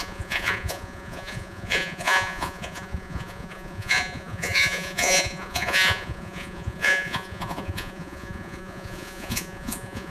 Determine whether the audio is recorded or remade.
remade